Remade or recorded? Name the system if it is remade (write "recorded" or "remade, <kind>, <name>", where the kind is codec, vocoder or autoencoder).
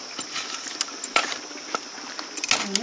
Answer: recorded